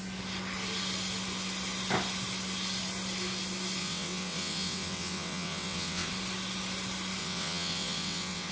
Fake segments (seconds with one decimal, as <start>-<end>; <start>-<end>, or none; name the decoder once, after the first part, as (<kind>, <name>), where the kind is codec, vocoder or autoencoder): 3.8-6.1 (vocoder, WaveNeXt); 7.2-8.5